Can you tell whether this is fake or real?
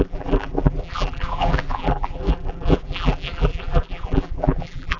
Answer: fake